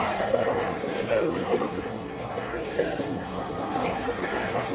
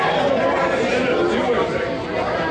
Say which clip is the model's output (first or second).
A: first